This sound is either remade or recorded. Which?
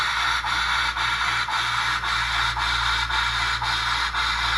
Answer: recorded